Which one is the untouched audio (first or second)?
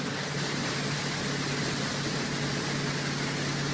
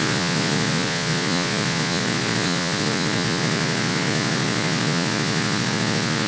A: first